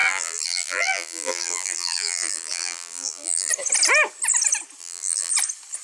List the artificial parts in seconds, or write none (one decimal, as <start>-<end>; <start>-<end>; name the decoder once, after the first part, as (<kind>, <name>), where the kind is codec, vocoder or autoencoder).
0.0-3.5 (vocoder, BigVGAN v2); 4.8-5.3